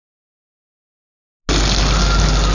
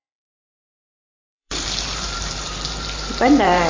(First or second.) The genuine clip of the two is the first